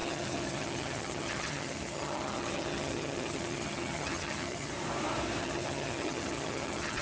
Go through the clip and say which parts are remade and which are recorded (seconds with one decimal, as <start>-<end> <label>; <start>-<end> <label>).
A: 0.0-4.7 remade; 4.7-5.4 recorded; 5.4-7.0 remade